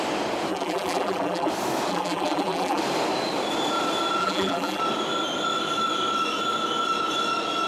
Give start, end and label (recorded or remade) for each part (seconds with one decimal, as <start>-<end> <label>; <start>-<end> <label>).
0.0-0.5 recorded; 0.5-1.5 remade; 1.5-1.9 recorded; 1.9-2.8 remade; 2.8-4.2 recorded; 4.2-4.8 remade; 4.8-7.7 recorded